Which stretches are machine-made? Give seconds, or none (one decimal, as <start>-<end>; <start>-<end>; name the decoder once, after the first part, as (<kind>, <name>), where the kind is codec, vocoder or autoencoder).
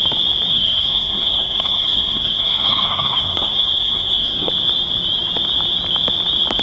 0.5-4.5 (codec, SNAC)